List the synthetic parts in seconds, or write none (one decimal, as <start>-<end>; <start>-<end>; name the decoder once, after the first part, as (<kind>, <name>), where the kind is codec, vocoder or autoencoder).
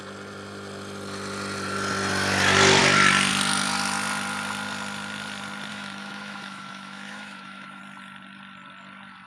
5.7-7.8 (autoencoder, DAC-VAE)